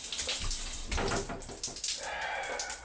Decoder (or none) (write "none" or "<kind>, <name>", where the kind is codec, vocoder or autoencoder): none